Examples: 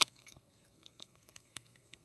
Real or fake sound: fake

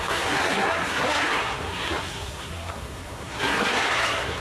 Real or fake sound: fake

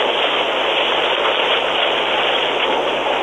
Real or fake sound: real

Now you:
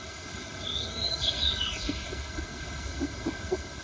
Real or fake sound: fake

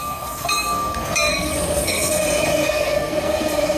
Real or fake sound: fake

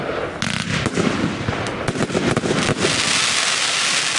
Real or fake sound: real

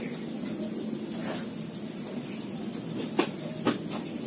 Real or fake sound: real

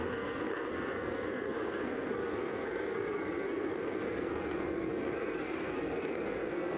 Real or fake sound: fake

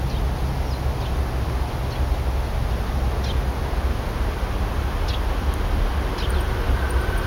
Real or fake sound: real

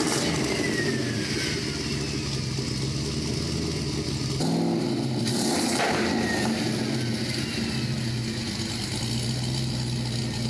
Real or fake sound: real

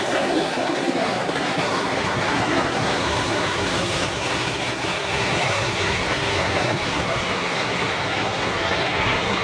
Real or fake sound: fake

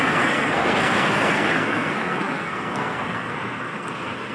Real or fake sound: fake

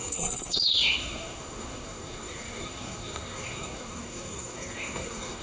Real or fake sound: fake